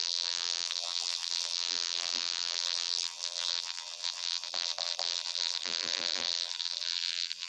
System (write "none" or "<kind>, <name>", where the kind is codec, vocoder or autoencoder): vocoder, BigVGAN v2